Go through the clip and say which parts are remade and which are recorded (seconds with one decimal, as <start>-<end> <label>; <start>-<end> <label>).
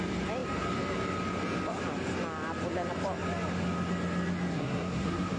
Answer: 0.0-4.5 recorded; 4.5-5.4 remade